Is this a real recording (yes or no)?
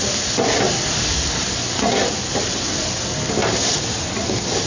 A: yes